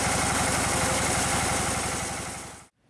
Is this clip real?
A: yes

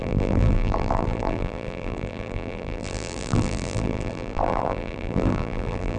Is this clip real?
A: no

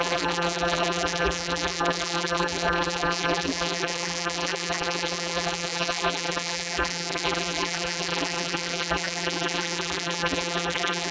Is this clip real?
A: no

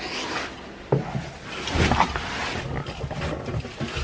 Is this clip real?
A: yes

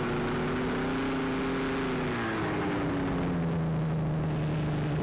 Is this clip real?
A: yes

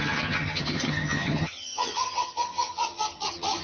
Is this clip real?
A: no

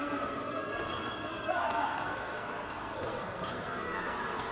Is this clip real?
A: no